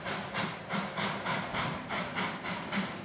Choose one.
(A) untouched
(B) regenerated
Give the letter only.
B